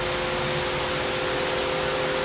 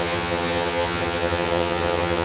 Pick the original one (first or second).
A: first